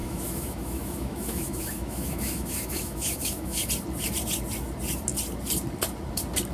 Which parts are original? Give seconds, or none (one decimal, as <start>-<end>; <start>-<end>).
3.7-6.5